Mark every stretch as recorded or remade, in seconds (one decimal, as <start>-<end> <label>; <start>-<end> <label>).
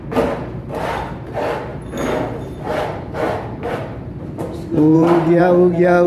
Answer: 0.0-4.9 recorded; 4.9-5.4 remade; 5.4-6.1 recorded